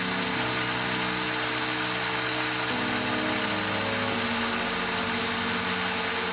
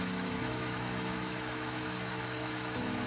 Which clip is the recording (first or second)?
first